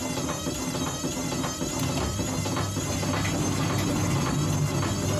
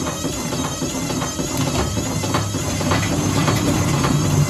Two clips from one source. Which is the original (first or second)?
first